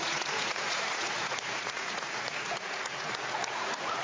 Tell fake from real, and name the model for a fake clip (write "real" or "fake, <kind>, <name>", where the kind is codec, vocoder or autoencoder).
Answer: fake, vocoder, Vocos